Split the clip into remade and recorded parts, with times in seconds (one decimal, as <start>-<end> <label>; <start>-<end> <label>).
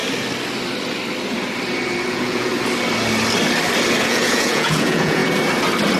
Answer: 0.0-2.1 recorded; 2.1-2.5 remade; 2.5-4.0 recorded; 4.0-5.2 remade; 5.2-6.0 recorded